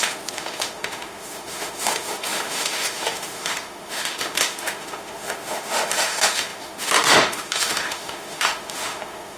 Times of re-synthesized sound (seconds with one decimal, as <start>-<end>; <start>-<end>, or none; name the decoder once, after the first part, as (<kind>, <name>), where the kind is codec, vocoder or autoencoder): 0.0-9.4 (autoencoder, DAC-VAE)